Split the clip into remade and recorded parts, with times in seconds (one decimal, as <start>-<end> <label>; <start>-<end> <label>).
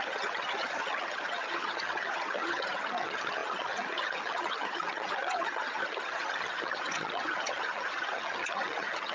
0.0-9.1 remade